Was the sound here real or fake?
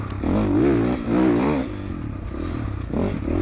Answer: real